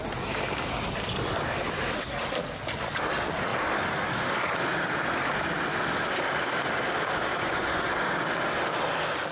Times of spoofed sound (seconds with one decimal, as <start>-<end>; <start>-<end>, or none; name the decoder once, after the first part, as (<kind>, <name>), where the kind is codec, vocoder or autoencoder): 7.3-7.9 (vocoder, Vocos)

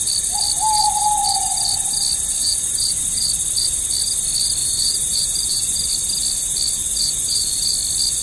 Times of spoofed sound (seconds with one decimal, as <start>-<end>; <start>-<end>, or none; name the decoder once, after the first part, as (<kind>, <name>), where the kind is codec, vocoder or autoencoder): 2.4-3.0 (vocoder, Vocos); 4.6-5.9; 6.8-7.6

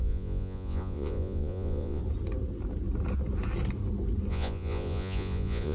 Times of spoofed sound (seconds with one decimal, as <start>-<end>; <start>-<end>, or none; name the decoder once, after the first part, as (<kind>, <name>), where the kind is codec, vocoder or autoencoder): 0.0-2.0 (vocoder, Vocos); 4.3-5.7

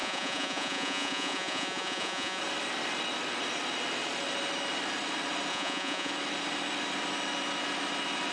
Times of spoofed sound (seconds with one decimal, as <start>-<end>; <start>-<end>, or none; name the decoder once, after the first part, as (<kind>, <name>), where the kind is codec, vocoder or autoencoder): 0.0-2.4 (vocoder, Vocos); 5.5-6.1